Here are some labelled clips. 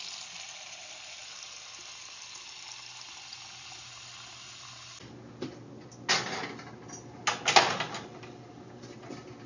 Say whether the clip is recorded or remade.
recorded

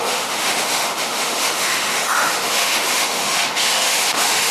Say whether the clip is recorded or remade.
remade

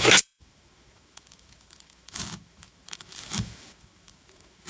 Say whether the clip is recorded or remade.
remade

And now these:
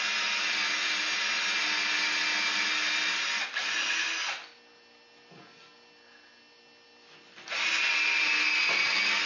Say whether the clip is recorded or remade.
recorded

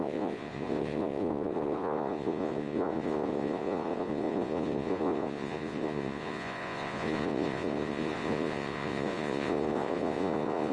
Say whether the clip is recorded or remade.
remade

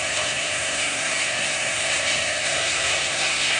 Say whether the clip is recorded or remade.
remade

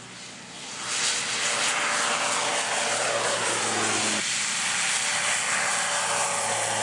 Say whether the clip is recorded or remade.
recorded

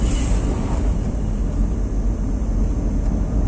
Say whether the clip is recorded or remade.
recorded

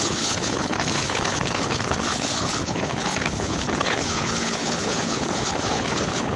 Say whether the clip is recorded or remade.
remade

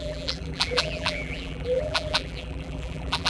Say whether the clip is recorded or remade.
remade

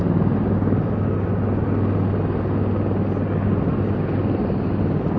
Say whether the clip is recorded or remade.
recorded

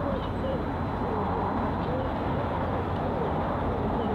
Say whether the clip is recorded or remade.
recorded